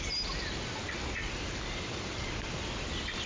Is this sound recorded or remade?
recorded